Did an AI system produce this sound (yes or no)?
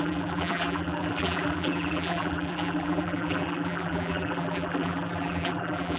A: yes